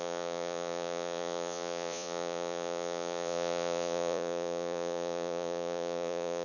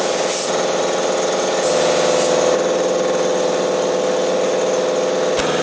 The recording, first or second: second